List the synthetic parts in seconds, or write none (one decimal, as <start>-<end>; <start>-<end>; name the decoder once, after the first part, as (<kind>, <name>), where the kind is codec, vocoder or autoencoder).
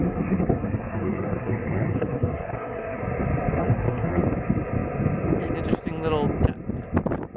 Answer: 0.0-3.0 (codec, SNAC); 3.6-4.2